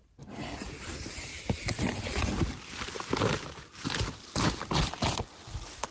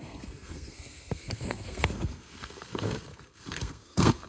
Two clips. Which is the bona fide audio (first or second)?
first